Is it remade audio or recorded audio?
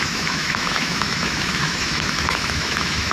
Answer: remade